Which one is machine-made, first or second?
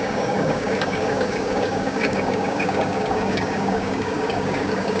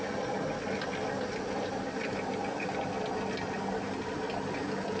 first